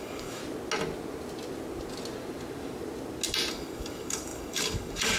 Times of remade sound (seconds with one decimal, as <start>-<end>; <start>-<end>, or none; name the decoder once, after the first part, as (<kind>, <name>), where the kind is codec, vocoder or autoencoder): 0.0-0.4 (codec, DAC); 3.5-5.2